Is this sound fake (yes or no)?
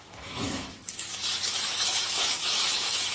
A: yes